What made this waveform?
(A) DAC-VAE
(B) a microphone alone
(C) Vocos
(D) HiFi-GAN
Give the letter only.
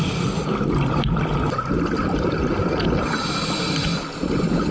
B